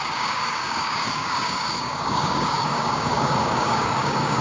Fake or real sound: fake